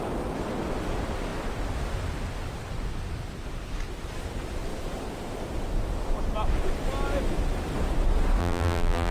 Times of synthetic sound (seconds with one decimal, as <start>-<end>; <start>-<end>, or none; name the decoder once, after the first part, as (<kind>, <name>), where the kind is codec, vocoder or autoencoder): 8.4-9.1 (vocoder, BigVGAN v2)